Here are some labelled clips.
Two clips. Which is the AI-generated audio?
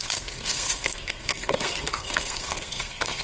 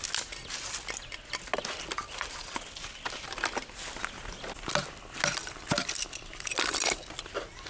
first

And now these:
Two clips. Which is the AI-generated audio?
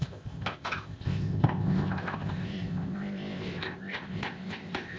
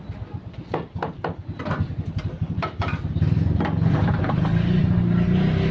first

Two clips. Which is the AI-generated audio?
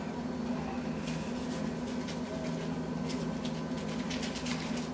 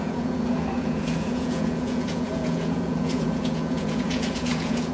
second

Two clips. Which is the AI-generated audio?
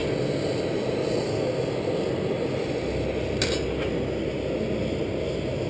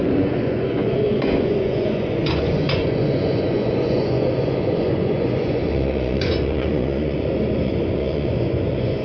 second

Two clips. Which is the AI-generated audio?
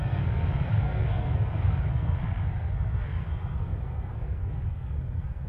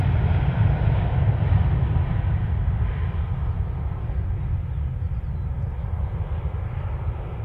first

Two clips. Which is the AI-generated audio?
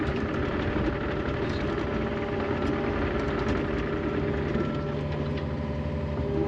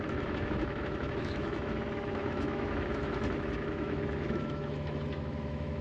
second